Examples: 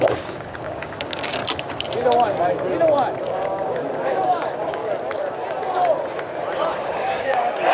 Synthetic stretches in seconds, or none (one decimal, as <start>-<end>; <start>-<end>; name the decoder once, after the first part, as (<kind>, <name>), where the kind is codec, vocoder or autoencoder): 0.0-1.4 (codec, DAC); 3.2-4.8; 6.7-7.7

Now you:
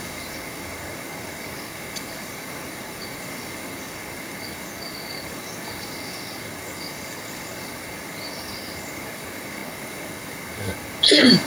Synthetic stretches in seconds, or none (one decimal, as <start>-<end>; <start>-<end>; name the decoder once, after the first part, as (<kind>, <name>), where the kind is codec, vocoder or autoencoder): 0.0-11.5 (codec, DAC)

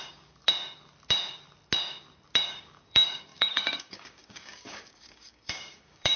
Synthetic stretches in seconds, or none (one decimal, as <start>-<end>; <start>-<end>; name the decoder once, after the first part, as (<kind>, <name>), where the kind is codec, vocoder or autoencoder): 0.0-0.4 (codec, DAC); 2.5-6.2